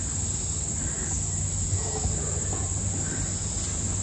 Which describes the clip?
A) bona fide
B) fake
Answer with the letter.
A